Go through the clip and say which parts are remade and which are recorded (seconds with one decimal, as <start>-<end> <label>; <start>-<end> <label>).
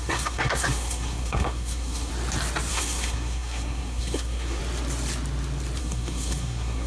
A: 0.0-2.1 remade; 2.1-2.7 recorded; 2.7-4.6 remade; 4.6-5.8 recorded; 5.8-6.9 remade